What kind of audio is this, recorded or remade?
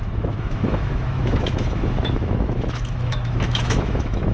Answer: remade